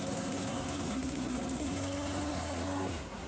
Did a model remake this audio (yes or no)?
yes